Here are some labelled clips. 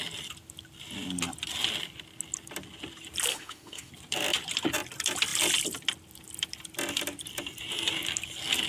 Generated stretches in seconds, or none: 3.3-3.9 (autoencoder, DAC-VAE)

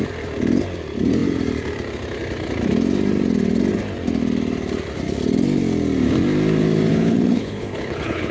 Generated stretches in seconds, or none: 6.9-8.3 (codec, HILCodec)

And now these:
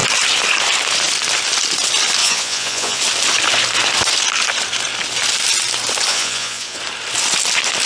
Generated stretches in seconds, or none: 2.2-3.0 (vocoder, Vocos); 6.1-6.8

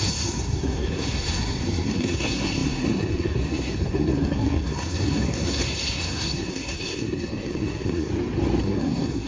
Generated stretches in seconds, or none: 0.0-8.1 (codec, SNAC); 8.6-9.3

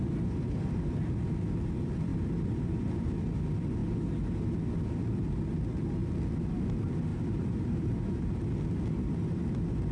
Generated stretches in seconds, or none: 2.1-3.2 (vocoder, BigVGAN v2); 7.1-8.4

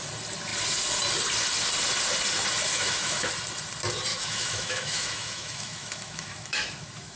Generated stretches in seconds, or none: 2.7-3.3 (autoencoder, DAC-VAE); 4.1-7.2

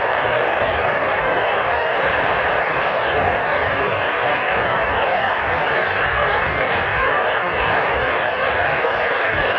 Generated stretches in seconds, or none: 0.0-2.1 (codec, DAC); 2.6-9.6

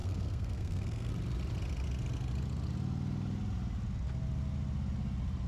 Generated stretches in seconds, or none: 0.0-1.1 (codec, SNAC)